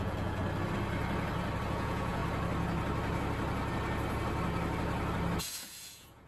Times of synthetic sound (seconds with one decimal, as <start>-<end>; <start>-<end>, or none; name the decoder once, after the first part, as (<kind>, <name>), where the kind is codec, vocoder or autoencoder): 0.0-0.4 (vocoder, Vocos); 1.7-2.2; 5.4-6.3